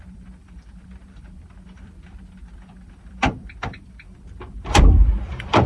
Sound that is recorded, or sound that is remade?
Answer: remade